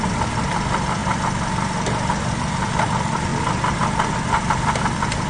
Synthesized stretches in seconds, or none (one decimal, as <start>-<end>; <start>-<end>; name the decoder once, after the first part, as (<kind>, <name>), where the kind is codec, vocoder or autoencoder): 0.0-1.0 (vocoder, BigVGAN v2); 2.3-3.3; 4.1-5.3